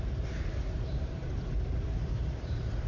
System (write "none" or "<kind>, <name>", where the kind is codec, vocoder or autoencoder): vocoder, BigVGAN v2